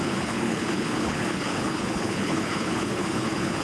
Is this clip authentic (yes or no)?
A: no